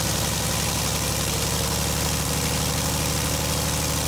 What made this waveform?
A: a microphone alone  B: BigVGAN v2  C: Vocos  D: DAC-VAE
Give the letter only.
A